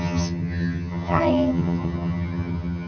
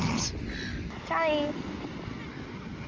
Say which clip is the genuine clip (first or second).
second